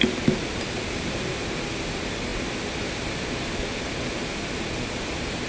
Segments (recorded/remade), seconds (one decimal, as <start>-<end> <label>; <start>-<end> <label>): 0.0-5.5 recorded